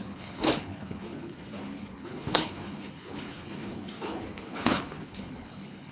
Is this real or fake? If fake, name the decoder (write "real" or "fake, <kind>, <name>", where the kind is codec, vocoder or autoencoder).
fake, codec, HILCodec